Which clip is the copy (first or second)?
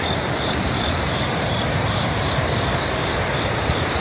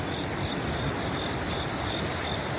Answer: first